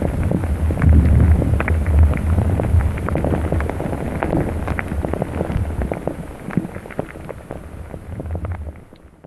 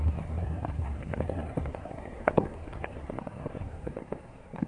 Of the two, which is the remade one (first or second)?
second